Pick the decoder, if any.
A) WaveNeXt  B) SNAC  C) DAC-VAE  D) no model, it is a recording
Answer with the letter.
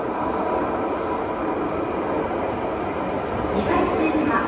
D